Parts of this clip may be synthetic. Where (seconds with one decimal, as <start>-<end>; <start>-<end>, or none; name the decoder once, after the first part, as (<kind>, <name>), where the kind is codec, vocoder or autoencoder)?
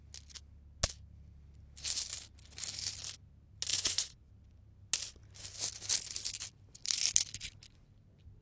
3.7-4.3 (vocoder, Vocos)